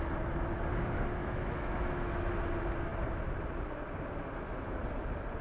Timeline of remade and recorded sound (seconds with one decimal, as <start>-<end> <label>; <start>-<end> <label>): 0.0-1.2 recorded; 1.2-2.3 remade; 2.3-5.4 recorded